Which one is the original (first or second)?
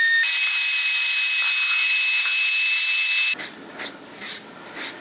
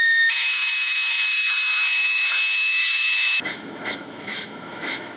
first